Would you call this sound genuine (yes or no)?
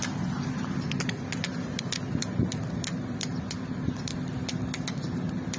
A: yes